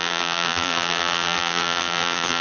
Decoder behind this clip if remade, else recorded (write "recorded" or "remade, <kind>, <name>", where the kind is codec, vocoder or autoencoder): remade, vocoder, BigVGAN v2